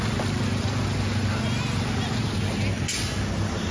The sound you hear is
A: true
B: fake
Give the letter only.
A